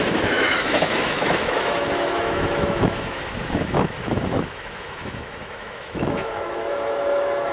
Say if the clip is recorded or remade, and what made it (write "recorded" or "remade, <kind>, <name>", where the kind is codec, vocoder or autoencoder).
remade, autoencoder, DAC-VAE